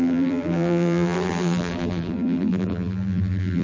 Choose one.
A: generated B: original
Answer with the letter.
A